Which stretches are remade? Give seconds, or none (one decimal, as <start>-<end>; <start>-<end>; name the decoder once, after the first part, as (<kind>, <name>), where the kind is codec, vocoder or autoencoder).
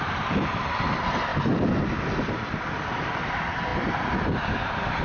0.0-1.3 (vocoder, BigVGAN v2); 2.3-5.0